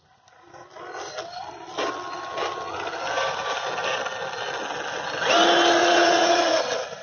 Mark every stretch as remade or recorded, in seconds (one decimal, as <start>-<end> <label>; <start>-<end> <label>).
0.0-5.8 recorded; 5.8-6.5 remade; 6.5-7.0 recorded

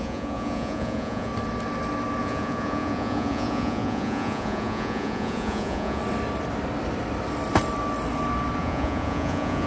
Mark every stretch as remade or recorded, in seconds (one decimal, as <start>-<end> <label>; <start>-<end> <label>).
0.0-1.3 remade; 1.3-2.2 recorded; 2.2-6.0 remade; 6.0-8.6 recorded; 8.6-9.7 remade

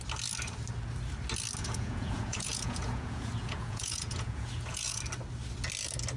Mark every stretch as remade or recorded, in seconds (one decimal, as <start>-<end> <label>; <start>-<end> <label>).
0.0-1.6 recorded; 1.6-5.0 remade; 5.0-6.2 recorded

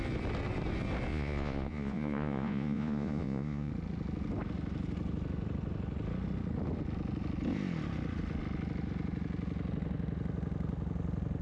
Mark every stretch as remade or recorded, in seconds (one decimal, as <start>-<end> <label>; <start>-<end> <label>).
0.0-1.1 recorded; 1.1-3.7 remade; 3.7-11.4 recorded